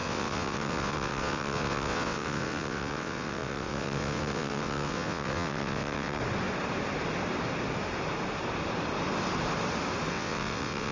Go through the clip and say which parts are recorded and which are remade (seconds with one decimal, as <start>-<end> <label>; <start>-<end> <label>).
0.0-6.2 remade; 6.2-10.1 recorded; 10.1-10.9 remade